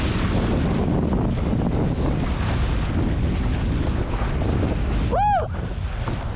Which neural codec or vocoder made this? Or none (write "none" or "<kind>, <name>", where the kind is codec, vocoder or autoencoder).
none